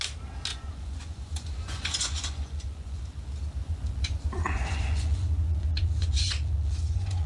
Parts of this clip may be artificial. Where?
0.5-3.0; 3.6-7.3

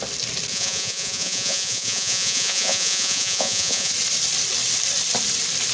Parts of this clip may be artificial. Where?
0.5-3.9

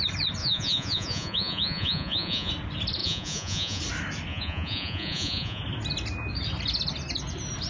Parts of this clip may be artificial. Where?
0.4-2.5; 3.0-3.8; 4.3-5.6

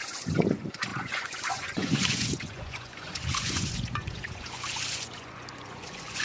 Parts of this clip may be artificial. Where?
0.0-6.2

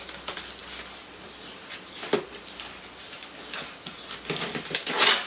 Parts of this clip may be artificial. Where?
none

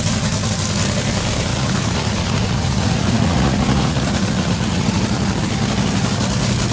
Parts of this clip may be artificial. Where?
1.5-5.0

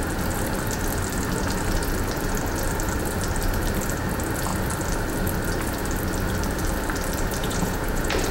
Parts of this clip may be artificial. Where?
7.4-8.3

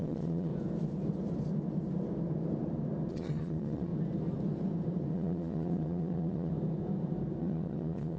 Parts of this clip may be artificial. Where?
0.0-0.5; 3.1-3.9; 5.1-6.5; 7.4-8.2